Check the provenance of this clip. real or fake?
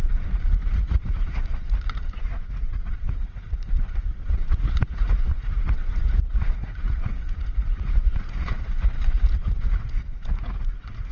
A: fake